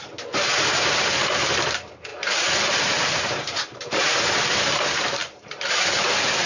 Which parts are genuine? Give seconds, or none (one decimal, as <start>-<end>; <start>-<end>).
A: 2.1-2.7